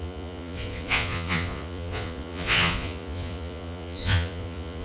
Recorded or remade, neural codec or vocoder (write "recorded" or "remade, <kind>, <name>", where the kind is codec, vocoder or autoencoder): remade, vocoder, Vocos